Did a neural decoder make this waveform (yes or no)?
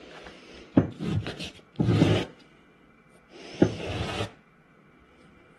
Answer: yes